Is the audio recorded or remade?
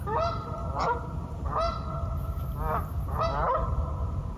recorded